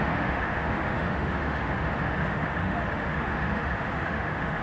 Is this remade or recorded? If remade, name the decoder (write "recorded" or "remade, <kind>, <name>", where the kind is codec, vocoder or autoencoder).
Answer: remade, autoencoder, DAC-VAE